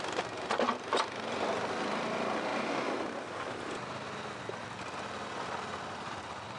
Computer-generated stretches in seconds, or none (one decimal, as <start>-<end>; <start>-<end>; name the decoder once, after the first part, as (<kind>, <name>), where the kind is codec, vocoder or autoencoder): none